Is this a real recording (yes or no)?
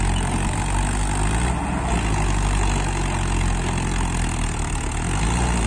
yes